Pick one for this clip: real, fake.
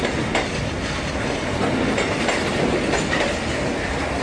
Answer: real